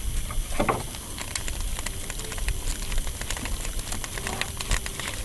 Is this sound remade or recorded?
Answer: recorded